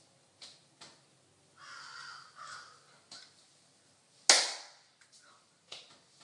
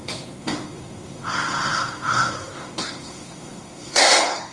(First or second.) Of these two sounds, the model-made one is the second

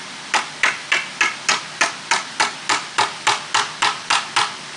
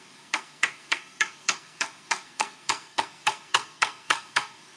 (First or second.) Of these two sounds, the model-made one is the second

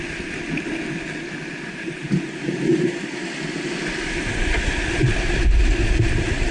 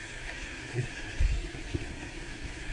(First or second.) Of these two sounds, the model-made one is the second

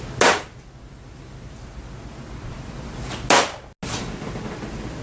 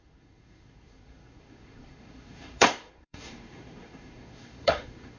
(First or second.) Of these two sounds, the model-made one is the second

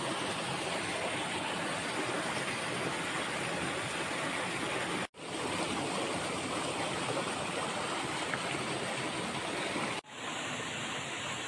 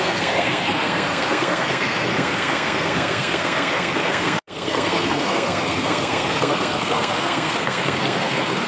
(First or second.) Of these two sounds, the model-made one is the second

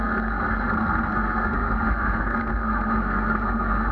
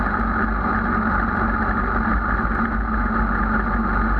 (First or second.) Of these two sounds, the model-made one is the first